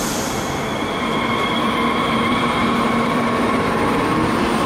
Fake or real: fake